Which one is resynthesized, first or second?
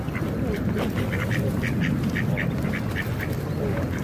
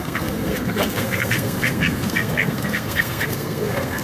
second